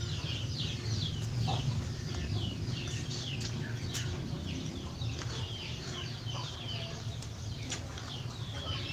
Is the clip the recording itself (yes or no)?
no